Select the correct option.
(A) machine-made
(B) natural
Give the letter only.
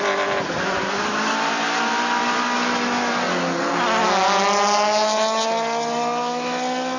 B